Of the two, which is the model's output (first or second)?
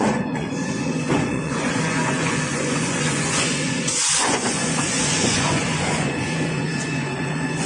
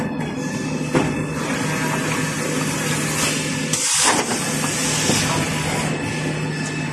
first